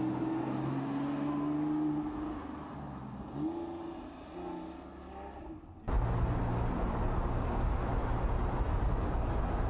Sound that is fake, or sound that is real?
real